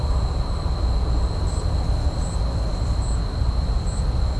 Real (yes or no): yes